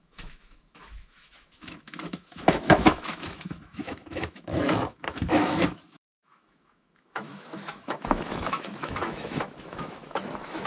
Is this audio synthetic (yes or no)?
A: yes